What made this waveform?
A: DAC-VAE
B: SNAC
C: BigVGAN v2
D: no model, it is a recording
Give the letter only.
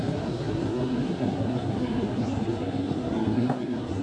B